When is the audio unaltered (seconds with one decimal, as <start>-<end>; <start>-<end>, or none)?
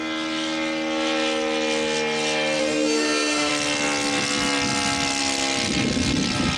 0.0-2.6; 3.5-6.6